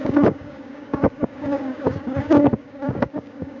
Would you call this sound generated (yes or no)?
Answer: yes